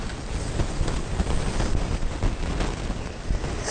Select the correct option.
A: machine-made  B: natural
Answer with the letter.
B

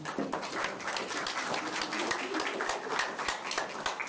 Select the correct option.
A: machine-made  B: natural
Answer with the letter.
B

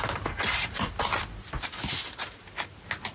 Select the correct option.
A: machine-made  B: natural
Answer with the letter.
B